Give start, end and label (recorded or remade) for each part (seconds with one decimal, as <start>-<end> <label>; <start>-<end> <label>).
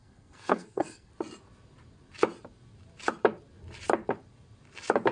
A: 0.0-1.1 remade; 1.1-5.1 recorded